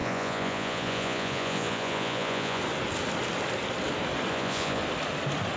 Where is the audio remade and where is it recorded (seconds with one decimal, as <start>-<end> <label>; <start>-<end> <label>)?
0.0-2.6 remade; 2.6-4.3 recorded; 4.3-4.8 remade; 4.8-5.6 recorded